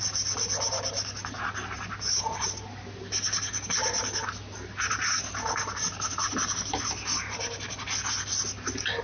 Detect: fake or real real